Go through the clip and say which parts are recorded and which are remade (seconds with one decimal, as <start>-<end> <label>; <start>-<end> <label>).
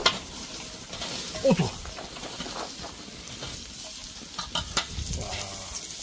0.0-6.0 recorded